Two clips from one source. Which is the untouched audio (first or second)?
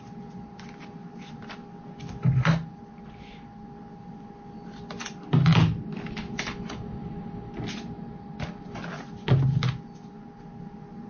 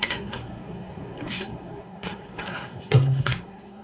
first